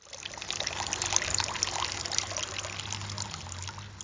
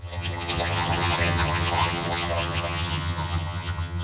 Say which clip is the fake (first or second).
second